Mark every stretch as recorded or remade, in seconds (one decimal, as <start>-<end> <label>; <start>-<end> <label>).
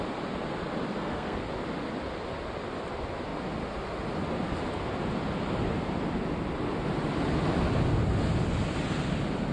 0.0-0.9 recorded; 0.9-1.4 remade; 1.4-9.5 recorded